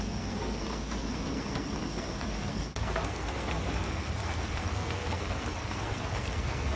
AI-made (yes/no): yes